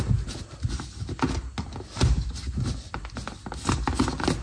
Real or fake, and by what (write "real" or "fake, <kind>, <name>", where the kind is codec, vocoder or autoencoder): real